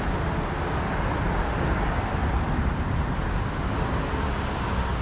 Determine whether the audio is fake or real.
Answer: real